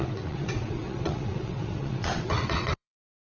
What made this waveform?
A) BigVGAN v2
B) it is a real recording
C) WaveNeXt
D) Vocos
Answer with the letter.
C